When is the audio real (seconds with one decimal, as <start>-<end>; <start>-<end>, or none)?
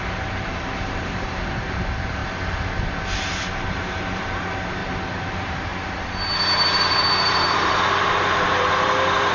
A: 2.2-3.2; 4.8-5.3; 5.7-7.2